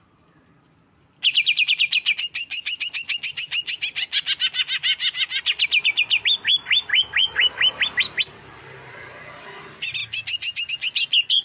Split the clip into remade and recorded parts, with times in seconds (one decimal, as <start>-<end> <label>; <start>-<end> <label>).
0.0-11.4 recorded